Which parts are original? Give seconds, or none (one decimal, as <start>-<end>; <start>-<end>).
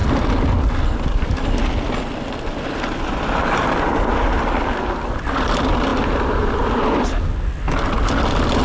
0.0-8.6